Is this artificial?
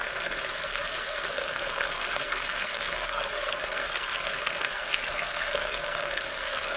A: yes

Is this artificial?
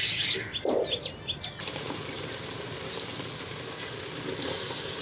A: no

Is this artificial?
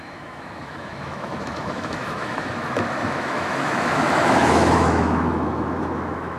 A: yes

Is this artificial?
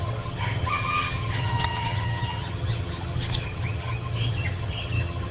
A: yes